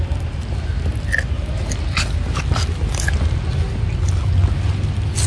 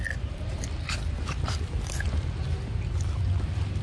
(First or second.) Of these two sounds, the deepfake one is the second